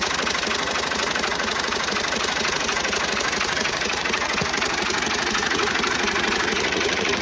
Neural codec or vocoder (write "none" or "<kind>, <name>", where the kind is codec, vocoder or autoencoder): vocoder, Vocos